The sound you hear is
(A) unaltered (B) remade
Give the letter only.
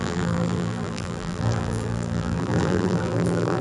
B